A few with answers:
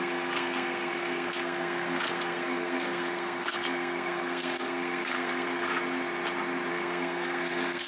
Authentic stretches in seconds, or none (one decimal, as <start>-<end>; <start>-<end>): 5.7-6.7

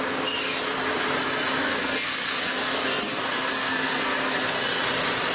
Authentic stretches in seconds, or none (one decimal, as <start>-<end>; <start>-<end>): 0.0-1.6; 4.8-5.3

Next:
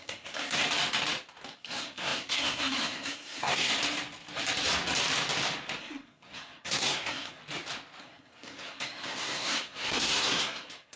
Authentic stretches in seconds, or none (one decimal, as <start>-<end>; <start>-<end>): 0.6-1.5; 3.7-5.8; 7.4-8.0

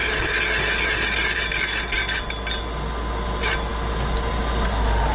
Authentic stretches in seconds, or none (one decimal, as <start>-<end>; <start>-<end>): 0.0-5.1

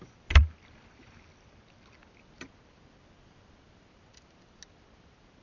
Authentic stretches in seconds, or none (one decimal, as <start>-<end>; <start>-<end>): 0.0-5.4

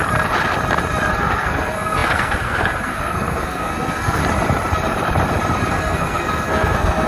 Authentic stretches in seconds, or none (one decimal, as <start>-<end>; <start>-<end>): 0.0-1.1; 4.2-5.7

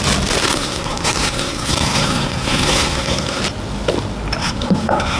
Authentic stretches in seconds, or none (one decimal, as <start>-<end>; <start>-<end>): 0.0-0.4; 3.4-4.4